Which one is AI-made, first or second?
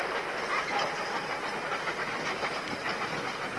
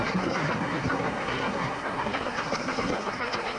second